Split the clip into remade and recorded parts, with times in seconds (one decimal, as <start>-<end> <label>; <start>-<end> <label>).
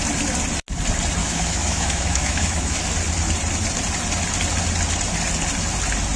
0.0-1.2 recorded; 1.2-2.8 remade; 2.8-6.2 recorded